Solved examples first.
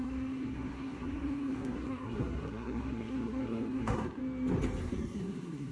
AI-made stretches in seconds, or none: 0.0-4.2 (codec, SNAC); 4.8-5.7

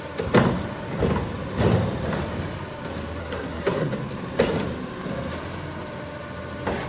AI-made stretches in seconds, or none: 3.2-3.9 (codec, SNAC)